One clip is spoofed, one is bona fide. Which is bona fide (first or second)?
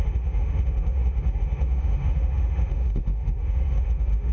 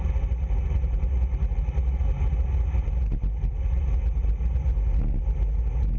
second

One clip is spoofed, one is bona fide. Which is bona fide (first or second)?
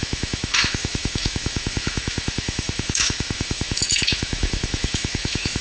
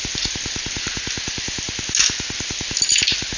second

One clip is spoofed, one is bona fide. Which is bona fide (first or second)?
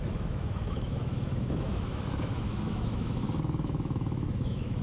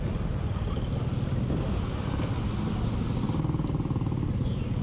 second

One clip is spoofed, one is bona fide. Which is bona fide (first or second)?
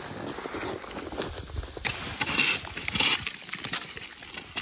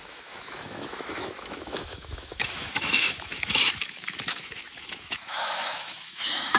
first